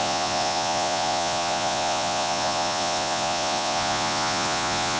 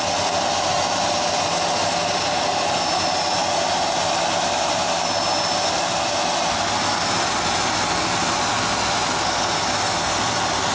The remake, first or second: first